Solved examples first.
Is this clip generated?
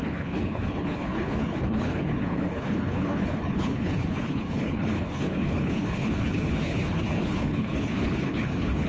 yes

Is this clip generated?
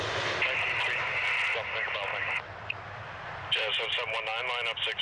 no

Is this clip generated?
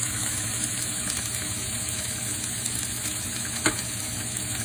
yes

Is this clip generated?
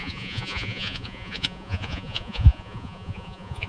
yes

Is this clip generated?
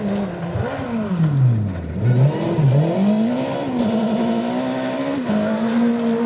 no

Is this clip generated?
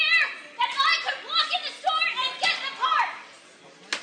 no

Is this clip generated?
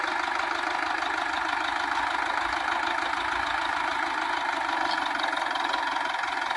no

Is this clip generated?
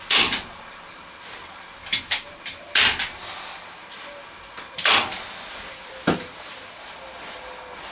no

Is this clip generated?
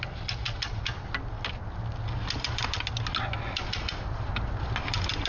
no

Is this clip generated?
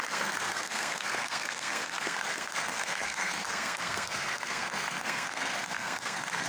yes